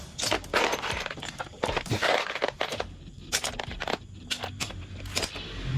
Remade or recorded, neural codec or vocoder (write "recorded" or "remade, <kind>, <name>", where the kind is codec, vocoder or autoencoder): recorded